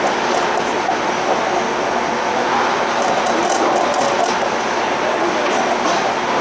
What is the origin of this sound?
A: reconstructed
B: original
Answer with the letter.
B